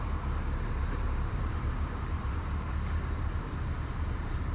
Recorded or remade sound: remade